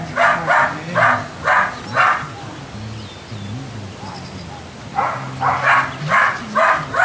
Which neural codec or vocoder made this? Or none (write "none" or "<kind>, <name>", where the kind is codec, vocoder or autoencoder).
none